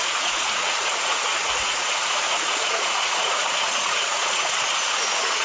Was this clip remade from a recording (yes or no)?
yes